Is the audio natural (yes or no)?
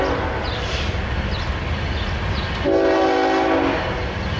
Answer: yes